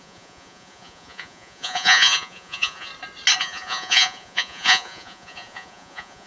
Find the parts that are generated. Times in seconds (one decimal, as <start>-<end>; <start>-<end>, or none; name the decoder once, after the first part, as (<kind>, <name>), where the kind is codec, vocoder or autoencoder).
0.0-2.9 (vocoder, Vocos); 3.4-6.3